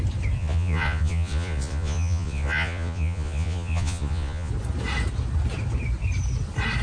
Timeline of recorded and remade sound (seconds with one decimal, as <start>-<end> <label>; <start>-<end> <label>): 0.0-0.4 recorded; 0.4-4.5 remade; 4.5-6.8 recorded